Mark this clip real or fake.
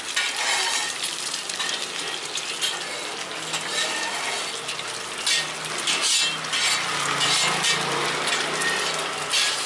real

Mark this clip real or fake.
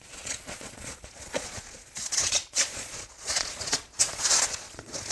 fake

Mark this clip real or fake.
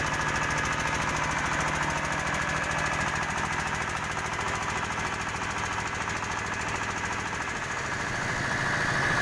real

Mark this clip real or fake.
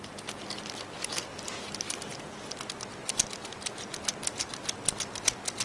real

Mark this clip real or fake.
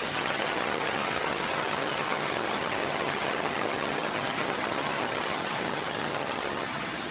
fake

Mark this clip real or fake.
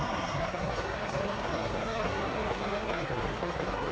fake